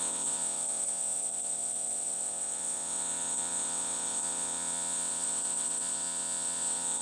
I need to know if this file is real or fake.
fake